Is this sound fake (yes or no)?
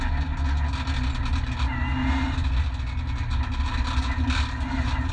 no